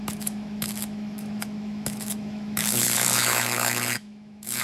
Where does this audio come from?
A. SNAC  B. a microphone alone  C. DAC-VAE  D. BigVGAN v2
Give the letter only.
C